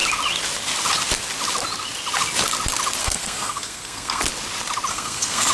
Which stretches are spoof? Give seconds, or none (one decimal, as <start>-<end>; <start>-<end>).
3.0-4.2; 4.9-5.5